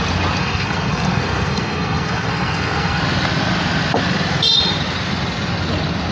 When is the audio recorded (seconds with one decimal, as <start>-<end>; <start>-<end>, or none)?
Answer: 0.0-0.4; 3.0-6.1

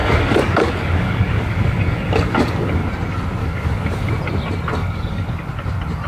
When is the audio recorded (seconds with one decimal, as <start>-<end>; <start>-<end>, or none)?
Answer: 2.9-3.4; 4.1-4.8; 5.5-6.1